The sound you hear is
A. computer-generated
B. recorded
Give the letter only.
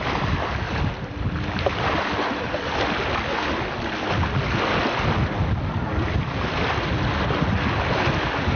B